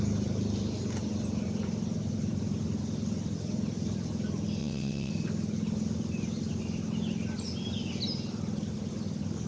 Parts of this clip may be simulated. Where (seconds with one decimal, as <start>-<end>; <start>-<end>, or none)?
4.6-5.1